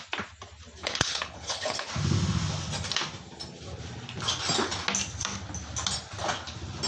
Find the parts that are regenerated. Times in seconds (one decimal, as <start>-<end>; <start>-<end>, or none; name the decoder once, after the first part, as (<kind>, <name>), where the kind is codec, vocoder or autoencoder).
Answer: 0.8-1.9 (codec, HILCodec)